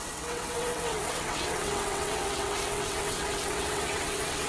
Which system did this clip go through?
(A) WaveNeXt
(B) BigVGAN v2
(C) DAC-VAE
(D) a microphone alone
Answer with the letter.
A